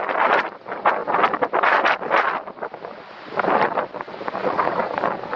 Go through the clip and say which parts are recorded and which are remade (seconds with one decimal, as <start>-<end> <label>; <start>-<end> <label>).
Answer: 0.0-4.4 recorded; 4.4-5.0 remade; 5.0-5.4 recorded